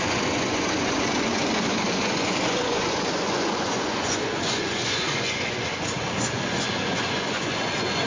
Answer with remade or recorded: remade